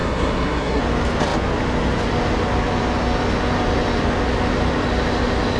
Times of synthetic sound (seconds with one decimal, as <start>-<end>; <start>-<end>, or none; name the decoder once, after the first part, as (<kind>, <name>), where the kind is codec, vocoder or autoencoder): 0.0-0.8 (codec, SNAC)

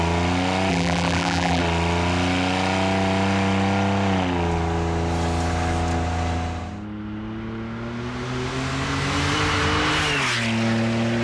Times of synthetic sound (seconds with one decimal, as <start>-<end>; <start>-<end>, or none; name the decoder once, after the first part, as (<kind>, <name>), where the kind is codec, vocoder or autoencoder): 0.7-1.6 (vocoder, BigVGAN v2)

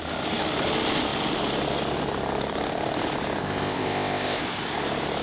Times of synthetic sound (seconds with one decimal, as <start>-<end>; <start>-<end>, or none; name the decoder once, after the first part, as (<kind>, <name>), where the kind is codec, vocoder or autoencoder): 3.4-4.4 (codec, ZipCodec)

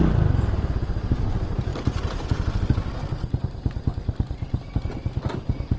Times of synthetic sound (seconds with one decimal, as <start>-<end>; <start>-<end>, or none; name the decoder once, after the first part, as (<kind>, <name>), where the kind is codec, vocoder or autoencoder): none

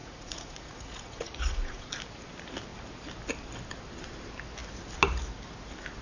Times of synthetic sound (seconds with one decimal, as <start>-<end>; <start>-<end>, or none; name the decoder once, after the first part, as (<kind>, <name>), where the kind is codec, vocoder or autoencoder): 0.0-1.9 (vocoder, Vocos)

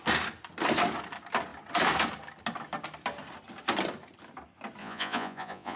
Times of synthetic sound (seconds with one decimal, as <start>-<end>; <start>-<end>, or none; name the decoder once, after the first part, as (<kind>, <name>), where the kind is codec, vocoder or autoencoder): 4.8-5.8 (vocoder, Vocos)

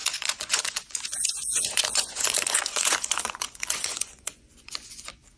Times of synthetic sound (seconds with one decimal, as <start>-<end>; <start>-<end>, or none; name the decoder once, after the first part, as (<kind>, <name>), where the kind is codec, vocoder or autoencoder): 0.0-5.4 (vocoder, Vocos)